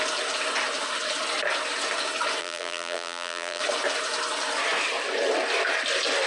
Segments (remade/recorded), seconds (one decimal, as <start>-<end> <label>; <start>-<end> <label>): 0.0-2.4 recorded; 2.4-3.6 remade; 3.6-6.3 recorded